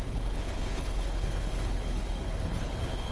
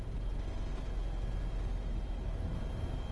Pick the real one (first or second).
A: second